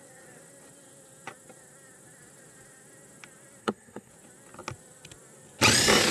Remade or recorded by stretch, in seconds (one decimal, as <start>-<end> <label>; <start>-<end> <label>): 0.0-3.6 recorded; 3.6-4.1 remade; 4.1-6.1 recorded